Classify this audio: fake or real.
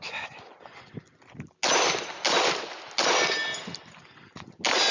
real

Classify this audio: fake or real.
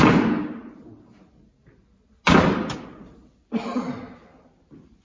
real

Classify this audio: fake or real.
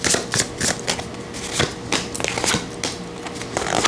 real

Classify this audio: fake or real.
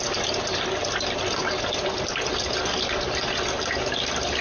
real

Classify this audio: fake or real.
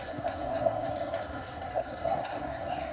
fake